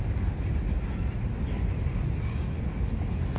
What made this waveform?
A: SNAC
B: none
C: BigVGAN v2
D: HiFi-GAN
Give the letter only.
B